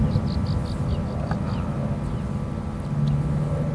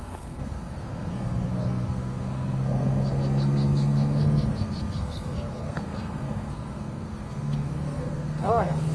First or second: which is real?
first